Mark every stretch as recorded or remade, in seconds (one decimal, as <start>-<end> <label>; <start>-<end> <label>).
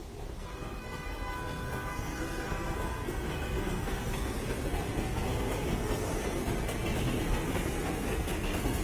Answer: 0.0-8.8 remade